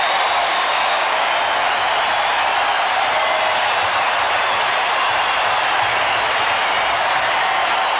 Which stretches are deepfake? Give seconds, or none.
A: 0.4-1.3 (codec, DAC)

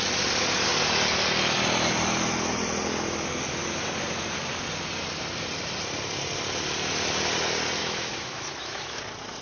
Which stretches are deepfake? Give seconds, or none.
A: 7.8-9.0 (autoencoder, DAC-VAE)